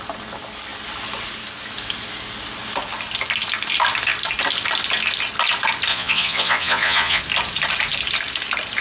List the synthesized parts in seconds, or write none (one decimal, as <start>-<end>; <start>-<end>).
5.9-7.2